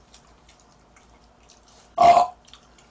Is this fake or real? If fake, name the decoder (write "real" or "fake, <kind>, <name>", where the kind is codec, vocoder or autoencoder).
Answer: real